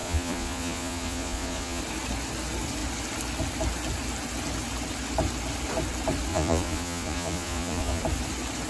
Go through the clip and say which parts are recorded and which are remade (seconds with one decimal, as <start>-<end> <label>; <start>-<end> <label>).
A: 0.0-1.8 remade; 1.8-6.3 recorded; 6.3-8.0 remade; 8.0-8.7 recorded